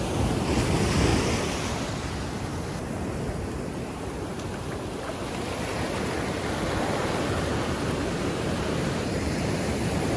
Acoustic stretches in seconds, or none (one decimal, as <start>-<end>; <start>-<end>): 0.0-7.5; 9.5-10.2

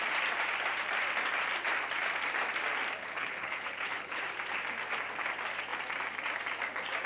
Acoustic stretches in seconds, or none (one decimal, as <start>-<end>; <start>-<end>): 0.0-3.0; 4.2-7.1